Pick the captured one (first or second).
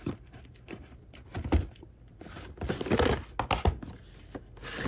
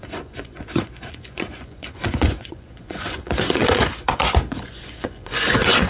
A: first